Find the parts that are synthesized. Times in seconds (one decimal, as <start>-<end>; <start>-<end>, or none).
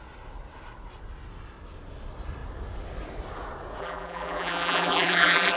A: 3.8-5.6